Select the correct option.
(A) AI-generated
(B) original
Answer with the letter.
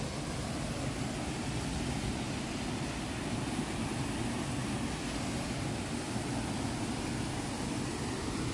B